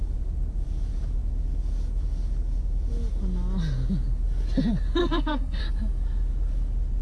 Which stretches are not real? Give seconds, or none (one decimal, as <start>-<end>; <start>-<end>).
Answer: 5.0-5.6